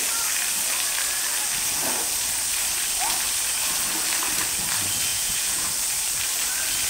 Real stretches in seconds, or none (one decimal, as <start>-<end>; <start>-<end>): 0.0-5.1; 5.7-6.9